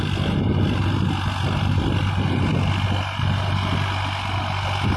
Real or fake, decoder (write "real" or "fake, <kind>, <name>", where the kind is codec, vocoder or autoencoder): real